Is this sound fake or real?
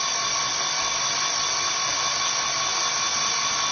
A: real